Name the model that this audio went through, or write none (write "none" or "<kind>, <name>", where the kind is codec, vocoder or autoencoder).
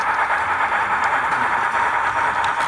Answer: none